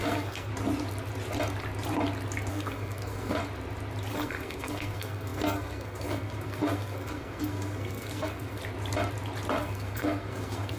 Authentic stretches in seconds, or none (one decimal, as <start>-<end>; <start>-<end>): 0.5-2.5; 3.4-4.1; 8.6-9.6